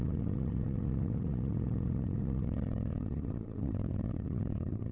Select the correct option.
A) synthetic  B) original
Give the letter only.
A